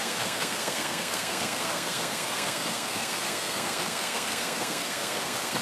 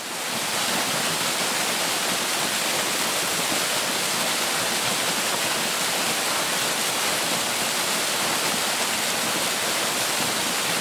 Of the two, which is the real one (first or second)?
second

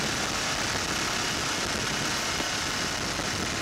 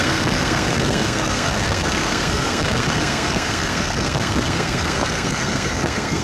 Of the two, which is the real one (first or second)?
first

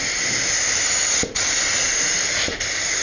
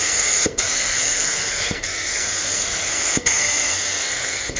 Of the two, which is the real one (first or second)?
first